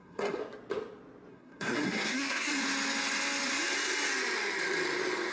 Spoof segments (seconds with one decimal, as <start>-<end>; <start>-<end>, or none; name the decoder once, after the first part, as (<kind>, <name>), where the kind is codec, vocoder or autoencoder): 0.0-0.4 (codec, SNAC); 1.3-2.5